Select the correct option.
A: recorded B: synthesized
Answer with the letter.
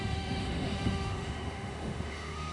B